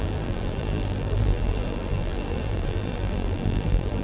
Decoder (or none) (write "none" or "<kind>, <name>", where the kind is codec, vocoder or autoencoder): vocoder, BigVGAN v2